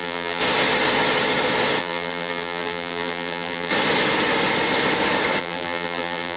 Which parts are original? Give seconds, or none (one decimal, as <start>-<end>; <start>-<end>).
0.4-1.8; 3.7-5.4